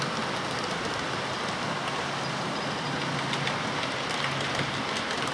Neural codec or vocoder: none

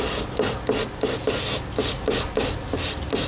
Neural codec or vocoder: none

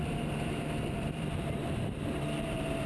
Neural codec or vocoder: vocoder, BigVGAN v2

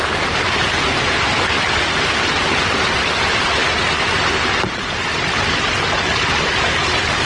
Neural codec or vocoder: none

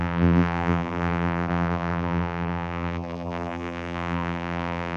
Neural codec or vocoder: vocoder, BigVGAN v2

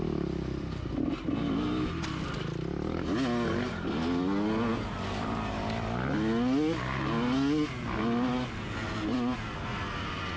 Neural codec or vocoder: none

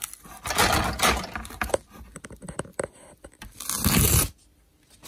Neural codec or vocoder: none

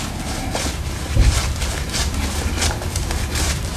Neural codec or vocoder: vocoder, BigVGAN v2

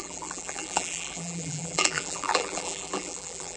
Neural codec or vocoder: vocoder, BigVGAN v2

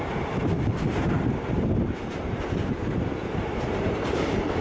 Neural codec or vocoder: vocoder, BigVGAN v2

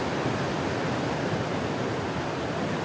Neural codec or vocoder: vocoder, BigVGAN v2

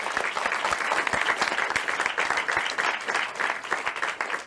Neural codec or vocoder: none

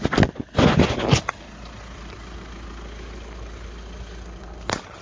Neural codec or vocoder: none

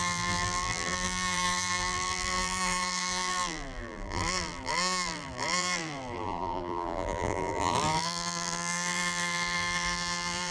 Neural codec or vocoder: vocoder, BigVGAN v2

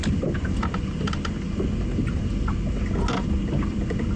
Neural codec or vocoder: none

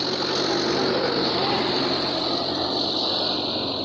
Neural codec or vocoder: none